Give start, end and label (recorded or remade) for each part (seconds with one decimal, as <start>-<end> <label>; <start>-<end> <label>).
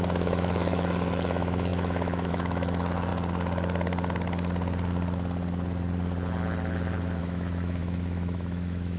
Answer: 0.0-3.1 remade; 3.1-7.2 recorded; 7.2-9.0 remade